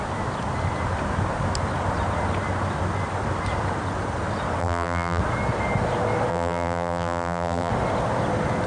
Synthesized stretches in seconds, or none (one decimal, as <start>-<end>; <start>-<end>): 4.6-5.2; 6.3-7.7

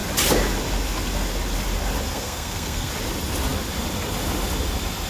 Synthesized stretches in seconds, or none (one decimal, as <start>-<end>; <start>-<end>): 2.1-2.9

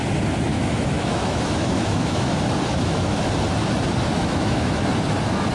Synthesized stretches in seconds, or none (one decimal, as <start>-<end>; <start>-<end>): 0.5-2.3; 2.7-3.3; 4.1-4.9